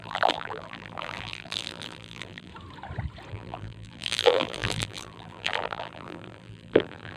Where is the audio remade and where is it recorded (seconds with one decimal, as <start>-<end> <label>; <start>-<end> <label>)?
0.0-2.5 remade; 2.5-3.3 recorded; 3.3-7.2 remade

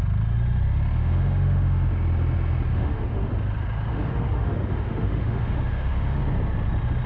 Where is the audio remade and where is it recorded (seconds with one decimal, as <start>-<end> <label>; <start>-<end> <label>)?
0.0-1.0 recorded; 1.0-1.9 remade; 1.9-2.7 recorded; 2.7-3.3 remade; 3.3-3.9 recorded; 3.9-6.2 remade; 6.2-7.1 recorded

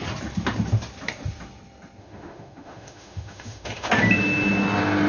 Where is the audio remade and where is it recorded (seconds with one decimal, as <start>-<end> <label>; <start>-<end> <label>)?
0.0-2.0 recorded; 2.0-3.9 remade; 3.9-5.1 recorded

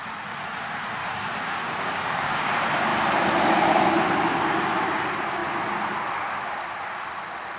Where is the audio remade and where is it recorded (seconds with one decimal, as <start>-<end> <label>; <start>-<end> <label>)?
0.0-1.0 recorded; 1.0-2.5 remade; 2.5-7.6 recorded

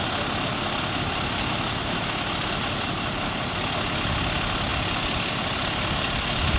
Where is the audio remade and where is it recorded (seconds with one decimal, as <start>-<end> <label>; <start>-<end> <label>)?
0.0-6.6 recorded

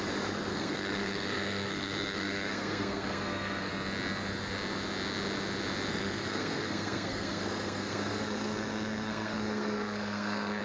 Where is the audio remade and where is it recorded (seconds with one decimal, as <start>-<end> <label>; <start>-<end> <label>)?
0.0-0.5 recorded; 0.5-3.7 remade; 3.7-5.9 recorded; 5.9-10.6 remade

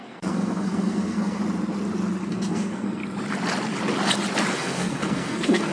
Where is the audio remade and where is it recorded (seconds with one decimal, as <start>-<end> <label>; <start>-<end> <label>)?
0.0-1.4 remade; 1.4-2.3 recorded; 2.3-3.0 remade; 3.0-4.5 recorded; 4.5-5.7 remade